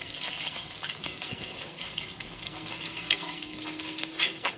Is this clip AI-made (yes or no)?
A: yes